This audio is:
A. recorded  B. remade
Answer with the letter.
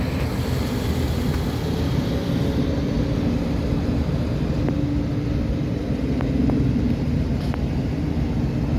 A